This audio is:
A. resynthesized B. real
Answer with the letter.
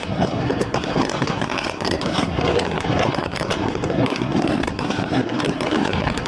A